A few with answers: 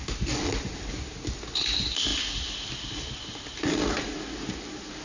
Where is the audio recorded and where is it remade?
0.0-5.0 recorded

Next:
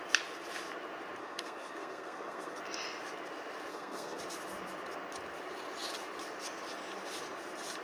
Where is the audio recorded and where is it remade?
0.0-1.2 recorded; 1.2-2.6 remade; 2.6-3.7 recorded; 3.7-4.2 remade; 4.2-7.8 recorded

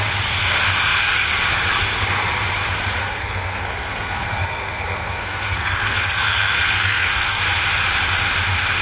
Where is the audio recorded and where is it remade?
0.0-3.0 recorded; 3.0-7.4 remade; 7.4-8.8 recorded